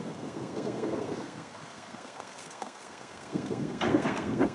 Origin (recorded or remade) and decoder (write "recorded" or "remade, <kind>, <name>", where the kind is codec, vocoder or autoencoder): remade, codec, SNAC